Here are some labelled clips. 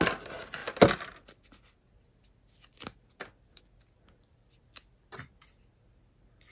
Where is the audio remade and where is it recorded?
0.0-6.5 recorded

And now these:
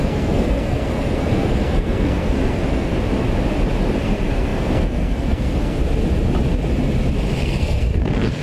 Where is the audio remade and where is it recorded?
0.0-2.9 remade; 2.9-4.0 recorded; 4.0-5.8 remade; 5.8-7.4 recorded; 7.4-8.4 remade

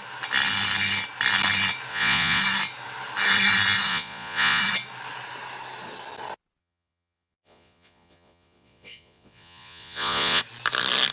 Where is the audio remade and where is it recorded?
0.0-1.9 recorded; 1.9-2.4 remade; 2.4-3.9 recorded; 3.9-4.6 remade; 4.6-6.6 recorded; 6.6-10.4 remade; 10.4-11.1 recorded